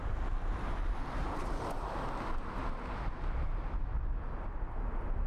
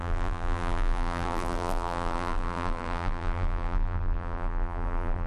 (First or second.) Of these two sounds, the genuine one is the first